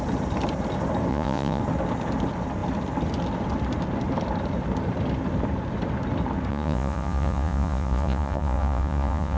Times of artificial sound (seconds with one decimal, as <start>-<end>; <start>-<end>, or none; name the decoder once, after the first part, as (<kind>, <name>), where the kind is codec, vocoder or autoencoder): 1.1-1.6 (vocoder, Vocos); 6.5-9.4